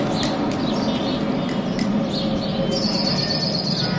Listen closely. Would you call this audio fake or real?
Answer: real